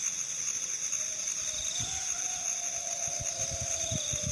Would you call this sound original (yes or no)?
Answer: yes